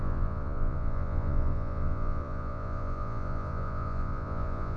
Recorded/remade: remade